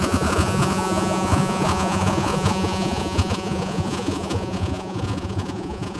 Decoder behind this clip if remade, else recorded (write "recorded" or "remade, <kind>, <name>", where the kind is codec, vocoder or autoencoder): remade, vocoder, Vocos